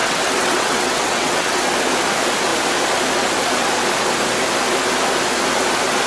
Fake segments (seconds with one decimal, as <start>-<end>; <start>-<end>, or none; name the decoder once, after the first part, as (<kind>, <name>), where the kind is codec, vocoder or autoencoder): 0.0-1.6 (vocoder, WaveNeXt)